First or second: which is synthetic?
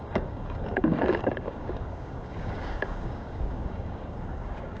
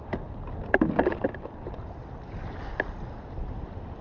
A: first